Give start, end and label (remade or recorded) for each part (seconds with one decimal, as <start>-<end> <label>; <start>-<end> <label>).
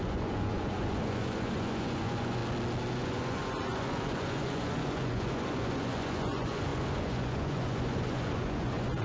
0.0-2.4 remade; 2.4-2.9 recorded; 2.9-9.0 remade